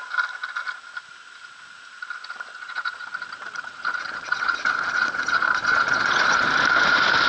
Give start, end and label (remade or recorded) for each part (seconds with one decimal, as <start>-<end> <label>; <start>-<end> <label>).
0.0-2.5 recorded; 2.5-6.5 remade; 6.5-7.3 recorded